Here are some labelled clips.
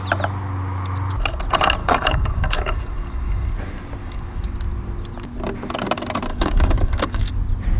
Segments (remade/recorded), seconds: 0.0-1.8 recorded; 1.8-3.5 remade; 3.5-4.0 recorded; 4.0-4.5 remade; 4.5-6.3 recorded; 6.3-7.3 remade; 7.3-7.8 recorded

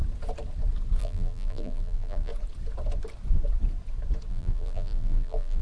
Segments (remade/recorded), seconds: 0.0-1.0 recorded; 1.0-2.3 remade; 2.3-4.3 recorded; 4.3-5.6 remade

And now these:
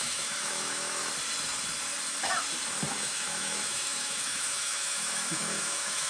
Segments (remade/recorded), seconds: 0.0-1.0 remade; 1.0-2.9 recorded; 2.9-6.1 remade